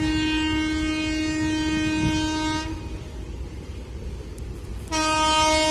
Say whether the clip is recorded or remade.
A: recorded